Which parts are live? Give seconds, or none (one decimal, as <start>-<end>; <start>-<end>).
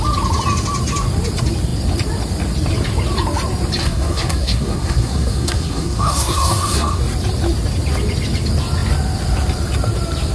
0.0-3.8; 7.0-10.3